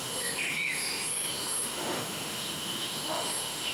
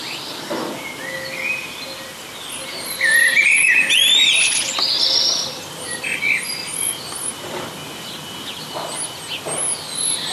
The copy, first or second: first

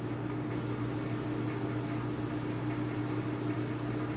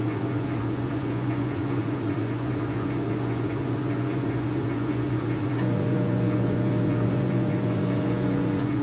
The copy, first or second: second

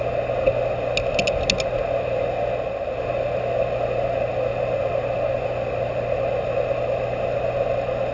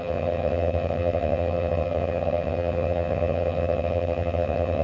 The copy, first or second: second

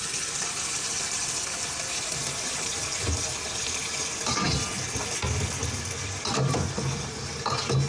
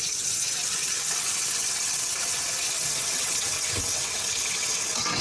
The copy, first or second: second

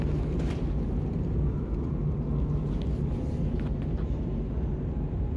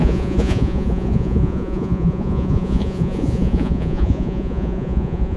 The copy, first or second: second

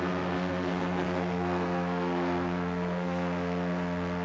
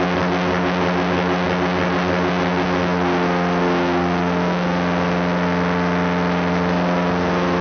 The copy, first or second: first